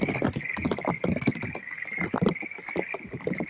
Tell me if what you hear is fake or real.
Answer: real